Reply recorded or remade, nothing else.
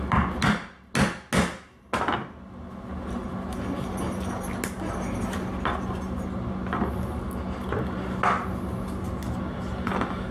recorded